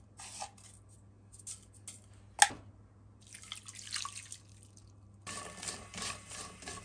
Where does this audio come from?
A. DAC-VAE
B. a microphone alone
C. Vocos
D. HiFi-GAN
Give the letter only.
B